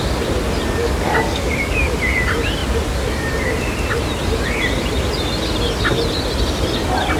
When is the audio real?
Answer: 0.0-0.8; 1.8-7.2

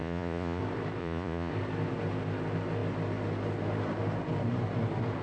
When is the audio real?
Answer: 0.6-1.0; 1.5-5.2

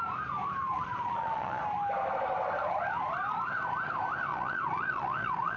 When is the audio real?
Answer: 0.0-0.7; 1.6-4.3

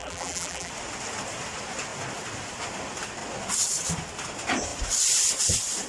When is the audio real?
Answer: 0.7-5.9

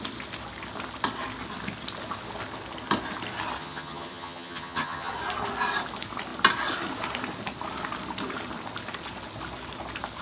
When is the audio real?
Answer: 0.0-3.6; 5.1-10.2

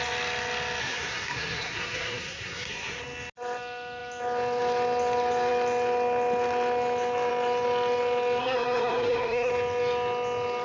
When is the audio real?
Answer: 0.0-0.8; 3.0-8.4; 9.5-10.6

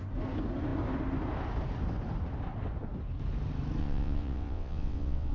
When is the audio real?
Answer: 0.0-3.8